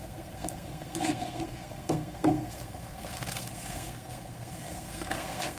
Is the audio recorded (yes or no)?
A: no